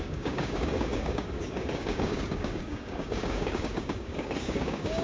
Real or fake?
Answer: fake